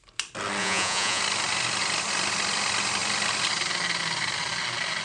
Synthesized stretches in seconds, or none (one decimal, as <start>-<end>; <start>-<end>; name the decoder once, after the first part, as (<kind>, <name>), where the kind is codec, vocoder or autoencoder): 0.6-1.2 (vocoder, Vocos)